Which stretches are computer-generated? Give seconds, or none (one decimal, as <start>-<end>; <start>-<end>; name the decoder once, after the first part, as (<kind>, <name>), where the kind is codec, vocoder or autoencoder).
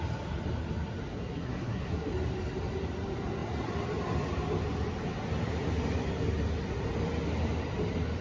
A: 1.1-2.1 (codec, SNAC)